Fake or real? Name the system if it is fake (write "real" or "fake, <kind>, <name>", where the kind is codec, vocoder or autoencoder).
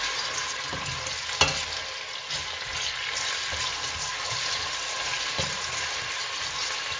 real